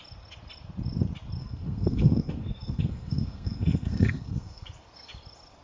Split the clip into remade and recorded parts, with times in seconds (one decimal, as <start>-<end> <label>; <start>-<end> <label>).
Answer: 0.0-1.4 recorded; 1.4-4.7 remade; 4.7-5.6 recorded